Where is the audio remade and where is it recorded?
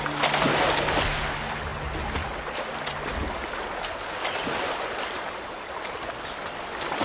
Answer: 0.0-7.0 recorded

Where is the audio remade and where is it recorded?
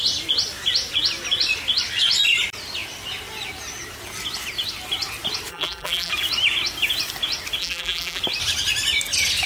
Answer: 0.0-5.5 recorded; 5.5-6.1 remade; 6.1-7.6 recorded; 7.6-8.2 remade; 8.2-9.5 recorded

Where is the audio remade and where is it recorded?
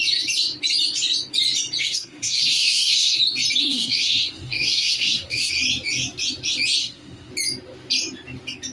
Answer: 0.0-1.8 recorded; 1.8-3.2 remade; 3.2-3.6 recorded; 3.6-5.5 remade; 5.5-6.8 recorded; 6.8-7.3 remade; 7.3-8.7 recorded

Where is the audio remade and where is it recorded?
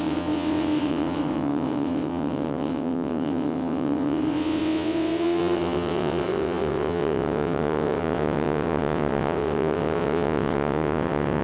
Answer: 0.0-11.4 remade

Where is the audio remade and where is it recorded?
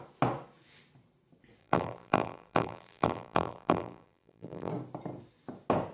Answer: 0.0-1.6 recorded; 1.6-4.7 remade; 4.7-5.9 recorded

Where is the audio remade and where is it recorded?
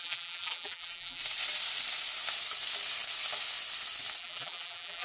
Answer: 0.0-1.2 remade; 1.2-4.2 recorded; 4.2-5.0 remade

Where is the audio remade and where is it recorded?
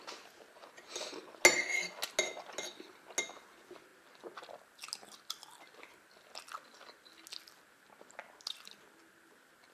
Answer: 0.0-9.7 recorded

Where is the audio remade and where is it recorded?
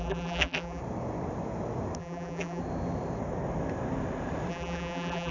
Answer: 0.0-0.8 remade; 0.8-2.0 recorded; 2.0-2.6 remade; 2.6-4.5 recorded; 4.5-5.3 remade